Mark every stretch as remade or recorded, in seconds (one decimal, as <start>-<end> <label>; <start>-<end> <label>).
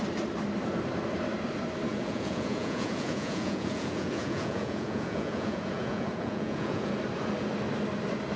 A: 0.0-1.9 recorded; 1.9-6.9 remade; 6.9-8.4 recorded